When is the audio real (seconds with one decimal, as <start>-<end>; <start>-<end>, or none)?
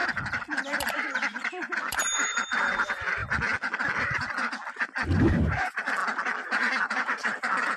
0.0-0.5; 3.2-5.3; 6.0-6.6